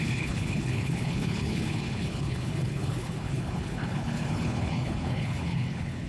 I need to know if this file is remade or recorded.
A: remade